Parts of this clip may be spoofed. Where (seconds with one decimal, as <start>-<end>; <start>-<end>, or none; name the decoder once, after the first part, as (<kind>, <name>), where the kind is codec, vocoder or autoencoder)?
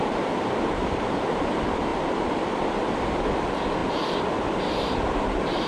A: 0.0-1.9 (vocoder, BigVGAN v2); 2.5-5.7